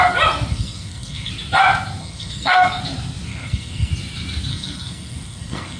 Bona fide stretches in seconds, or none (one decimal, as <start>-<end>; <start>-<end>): 0.0-0.5; 1.3-2.0; 2.8-3.3; 3.9-4.5